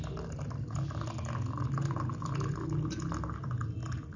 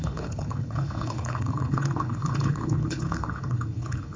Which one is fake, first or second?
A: second